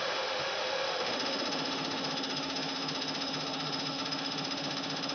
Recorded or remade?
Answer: remade